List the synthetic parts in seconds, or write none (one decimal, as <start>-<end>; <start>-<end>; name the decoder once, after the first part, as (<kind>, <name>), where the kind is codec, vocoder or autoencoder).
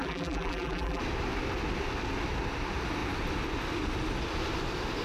0.0-1.0 (vocoder, BigVGAN v2)